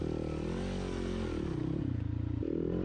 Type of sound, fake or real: real